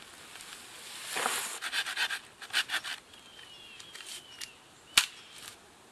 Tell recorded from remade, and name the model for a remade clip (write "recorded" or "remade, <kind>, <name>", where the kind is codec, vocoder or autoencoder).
recorded